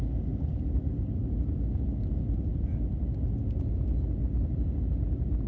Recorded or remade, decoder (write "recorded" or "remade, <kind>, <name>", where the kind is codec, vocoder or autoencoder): recorded